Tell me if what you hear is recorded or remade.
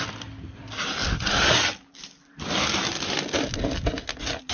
recorded